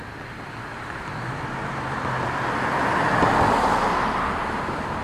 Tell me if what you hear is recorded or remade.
recorded